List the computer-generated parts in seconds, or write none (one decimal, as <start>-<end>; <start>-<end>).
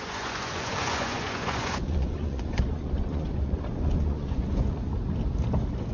0.0-4.9